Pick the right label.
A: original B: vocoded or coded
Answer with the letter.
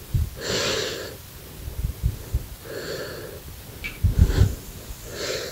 A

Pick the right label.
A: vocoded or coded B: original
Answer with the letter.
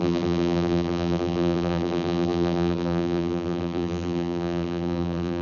A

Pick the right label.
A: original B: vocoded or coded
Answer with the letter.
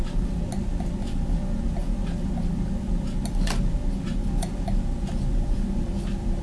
A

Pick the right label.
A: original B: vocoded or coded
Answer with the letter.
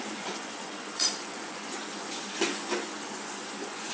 B